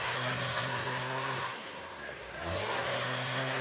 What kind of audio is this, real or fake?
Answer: fake